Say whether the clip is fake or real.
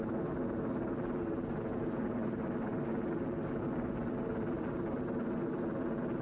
real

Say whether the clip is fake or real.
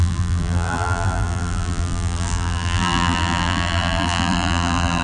fake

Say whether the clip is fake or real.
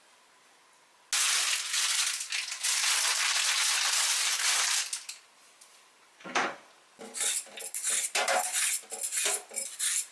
real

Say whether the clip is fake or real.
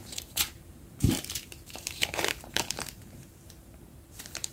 fake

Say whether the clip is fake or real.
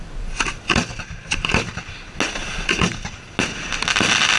real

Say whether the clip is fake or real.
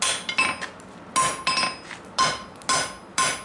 real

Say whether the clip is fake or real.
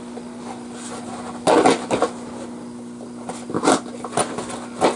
real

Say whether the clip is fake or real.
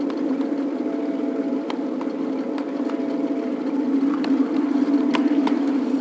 fake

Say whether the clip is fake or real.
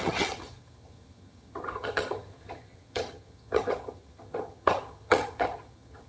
fake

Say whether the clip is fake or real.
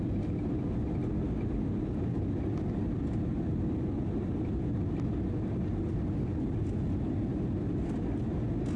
real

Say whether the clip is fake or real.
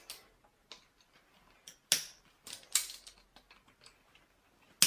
real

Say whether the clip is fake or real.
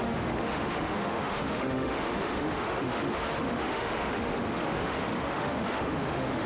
fake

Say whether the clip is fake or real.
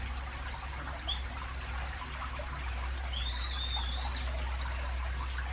real